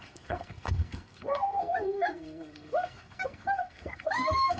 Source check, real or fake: fake